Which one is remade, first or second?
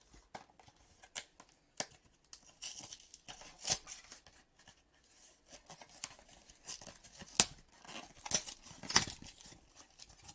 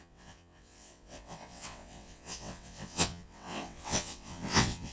second